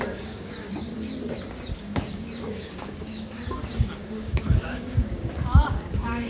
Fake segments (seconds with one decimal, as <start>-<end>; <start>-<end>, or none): 0.0-0.9; 1.8-6.3